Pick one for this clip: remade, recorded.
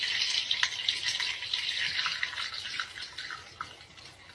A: recorded